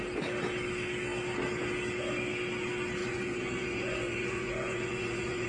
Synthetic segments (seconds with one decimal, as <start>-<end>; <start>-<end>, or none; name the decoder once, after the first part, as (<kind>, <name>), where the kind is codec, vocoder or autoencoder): 3.0-5.5 (vocoder, Vocos)